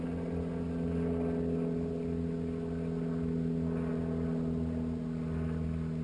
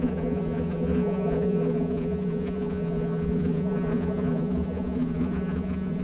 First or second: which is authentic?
first